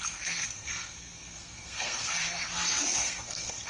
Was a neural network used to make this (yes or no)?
yes